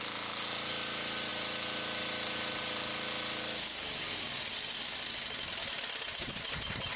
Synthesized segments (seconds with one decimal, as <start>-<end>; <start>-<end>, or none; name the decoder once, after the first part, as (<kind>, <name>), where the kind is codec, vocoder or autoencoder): none